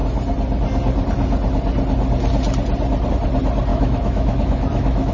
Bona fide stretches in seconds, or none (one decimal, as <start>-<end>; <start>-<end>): 0.0-3.7